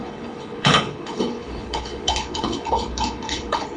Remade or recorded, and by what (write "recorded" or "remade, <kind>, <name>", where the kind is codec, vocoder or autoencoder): remade, codec, HILCodec